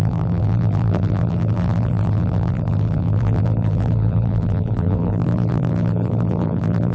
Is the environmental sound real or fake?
fake